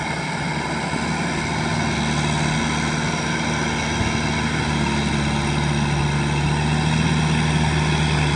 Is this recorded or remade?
recorded